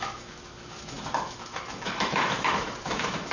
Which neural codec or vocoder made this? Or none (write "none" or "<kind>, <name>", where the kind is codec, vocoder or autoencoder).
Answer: autoencoder, DAC-VAE